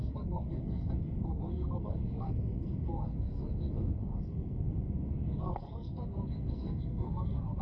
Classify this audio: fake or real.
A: fake